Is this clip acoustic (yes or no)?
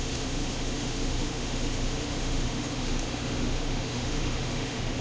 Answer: no